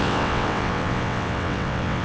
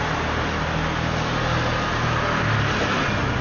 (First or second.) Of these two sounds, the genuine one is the second